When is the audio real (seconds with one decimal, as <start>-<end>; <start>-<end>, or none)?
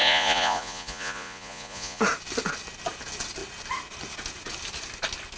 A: 2.0-5.4